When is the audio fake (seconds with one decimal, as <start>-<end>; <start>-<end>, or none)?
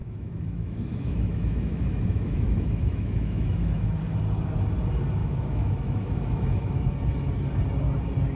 0.0-4.0; 5.2-6.9